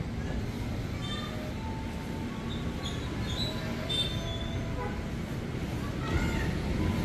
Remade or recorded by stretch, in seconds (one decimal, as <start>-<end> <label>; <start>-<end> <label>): 0.0-7.0 recorded